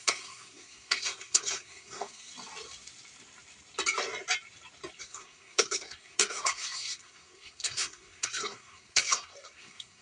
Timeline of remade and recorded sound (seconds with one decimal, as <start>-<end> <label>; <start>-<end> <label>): 0.0-2.3 remade; 2.3-5.0 recorded; 5.0-10.0 remade